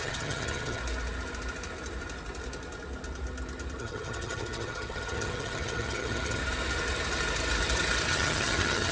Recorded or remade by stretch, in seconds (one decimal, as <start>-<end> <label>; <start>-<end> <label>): 0.0-0.8 remade; 0.8-3.8 recorded; 3.8-6.4 remade; 6.4-8.1 recorded; 8.1-8.9 remade